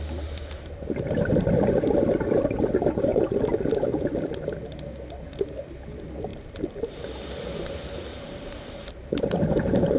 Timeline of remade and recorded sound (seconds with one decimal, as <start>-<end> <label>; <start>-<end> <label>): 0.0-3.1 recorded; 3.1-3.8 remade; 3.8-6.3 recorded; 6.3-7.0 remade; 7.0-8.1 recorded; 8.1-8.9 remade; 8.9-10.0 recorded